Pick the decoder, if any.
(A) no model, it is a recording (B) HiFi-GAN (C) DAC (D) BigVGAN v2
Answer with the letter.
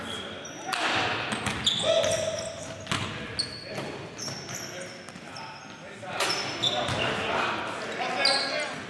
A